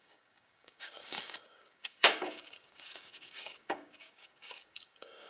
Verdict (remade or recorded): remade